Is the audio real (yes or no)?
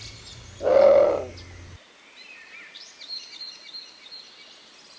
yes